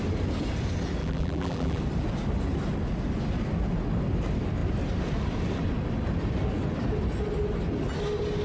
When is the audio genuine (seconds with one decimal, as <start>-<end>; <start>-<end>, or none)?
0.0-1.0; 1.8-8.4